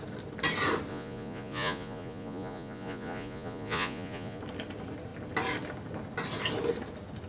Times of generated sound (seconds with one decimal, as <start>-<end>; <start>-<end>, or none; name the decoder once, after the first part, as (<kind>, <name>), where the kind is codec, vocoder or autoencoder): 0.9-4.4 (vocoder, Vocos)